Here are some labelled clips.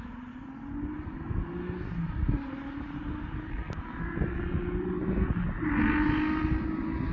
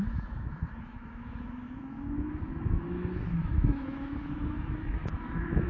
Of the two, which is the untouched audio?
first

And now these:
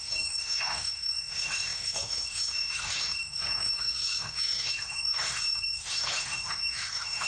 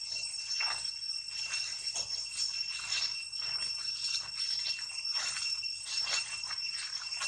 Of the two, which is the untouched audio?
second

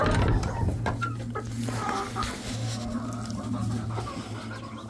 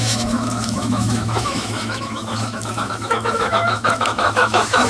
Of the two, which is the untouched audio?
first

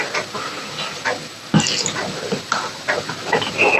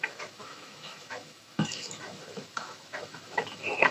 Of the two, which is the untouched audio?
first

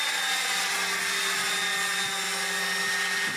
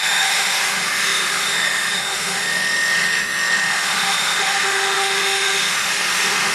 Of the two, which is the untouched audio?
first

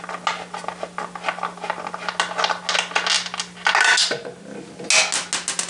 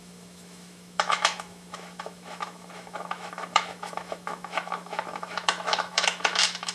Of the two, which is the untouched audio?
first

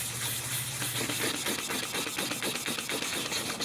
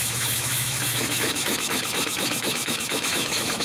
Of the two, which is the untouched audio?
first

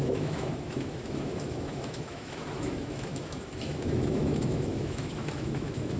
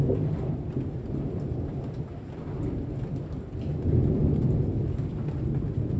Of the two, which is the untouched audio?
second